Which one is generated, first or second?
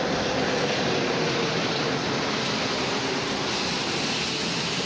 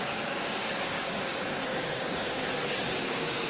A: second